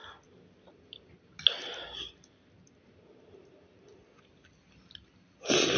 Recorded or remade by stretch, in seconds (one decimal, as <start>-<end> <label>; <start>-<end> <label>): 0.0-5.8 recorded